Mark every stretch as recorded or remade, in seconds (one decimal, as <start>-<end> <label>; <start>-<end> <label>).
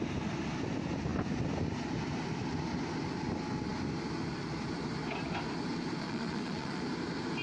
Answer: 0.0-6.0 recorded; 6.0-6.8 remade; 6.8-7.4 recorded